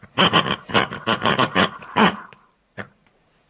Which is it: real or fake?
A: fake